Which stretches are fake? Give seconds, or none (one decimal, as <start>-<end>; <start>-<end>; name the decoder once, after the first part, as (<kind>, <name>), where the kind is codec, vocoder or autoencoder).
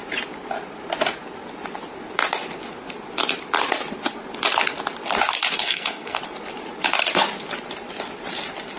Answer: 5.6-6.2 (codec, SNAC)